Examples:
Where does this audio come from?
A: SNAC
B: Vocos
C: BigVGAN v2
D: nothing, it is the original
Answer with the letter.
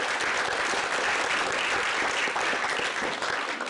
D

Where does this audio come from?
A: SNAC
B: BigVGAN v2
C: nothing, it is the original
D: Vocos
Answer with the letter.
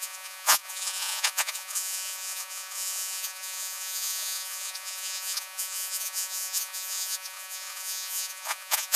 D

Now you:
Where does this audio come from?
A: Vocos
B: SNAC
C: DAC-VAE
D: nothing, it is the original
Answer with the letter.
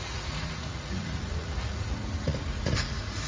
A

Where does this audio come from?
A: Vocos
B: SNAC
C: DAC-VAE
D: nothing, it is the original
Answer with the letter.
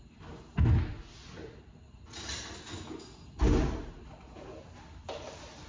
D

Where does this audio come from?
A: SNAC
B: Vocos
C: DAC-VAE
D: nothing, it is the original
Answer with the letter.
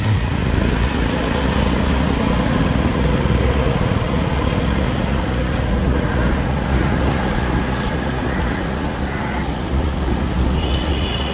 B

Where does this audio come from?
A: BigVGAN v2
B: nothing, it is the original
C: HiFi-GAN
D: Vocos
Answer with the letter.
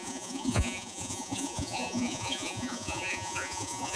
D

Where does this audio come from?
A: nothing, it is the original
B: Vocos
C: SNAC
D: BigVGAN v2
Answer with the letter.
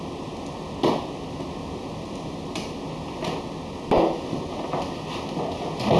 A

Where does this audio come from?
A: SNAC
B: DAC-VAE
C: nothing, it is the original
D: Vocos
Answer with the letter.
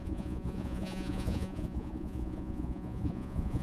D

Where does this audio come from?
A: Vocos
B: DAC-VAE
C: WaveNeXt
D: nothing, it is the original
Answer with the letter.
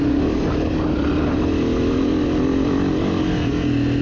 D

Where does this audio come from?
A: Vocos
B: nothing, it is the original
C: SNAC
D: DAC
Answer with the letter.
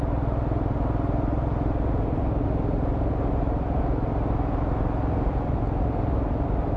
B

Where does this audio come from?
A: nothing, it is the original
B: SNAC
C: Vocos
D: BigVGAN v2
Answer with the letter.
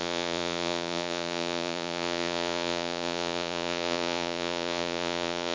C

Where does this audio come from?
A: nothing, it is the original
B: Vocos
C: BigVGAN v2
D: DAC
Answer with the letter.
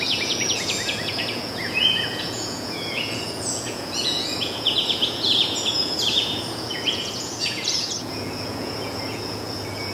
B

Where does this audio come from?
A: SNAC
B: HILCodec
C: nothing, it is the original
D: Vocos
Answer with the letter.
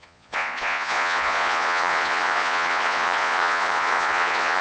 D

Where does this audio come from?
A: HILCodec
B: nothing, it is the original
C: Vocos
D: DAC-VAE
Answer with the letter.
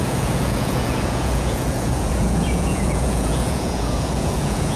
C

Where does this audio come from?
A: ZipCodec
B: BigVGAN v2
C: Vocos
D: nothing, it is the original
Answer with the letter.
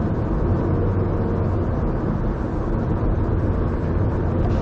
D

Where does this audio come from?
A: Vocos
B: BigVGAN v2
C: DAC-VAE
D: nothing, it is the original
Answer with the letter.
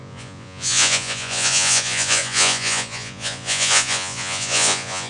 A